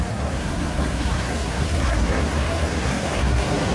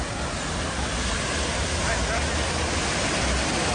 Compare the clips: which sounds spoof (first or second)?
first